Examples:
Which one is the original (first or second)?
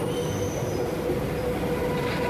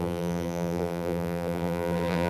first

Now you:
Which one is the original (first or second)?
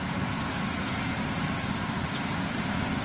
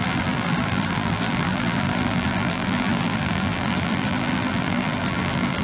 first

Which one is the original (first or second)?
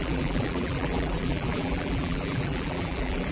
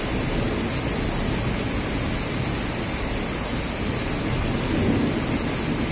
second